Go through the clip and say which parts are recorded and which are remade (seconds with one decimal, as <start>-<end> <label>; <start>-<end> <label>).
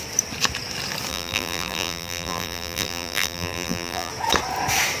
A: 0.0-1.1 recorded; 1.1-4.1 remade; 4.1-5.0 recorded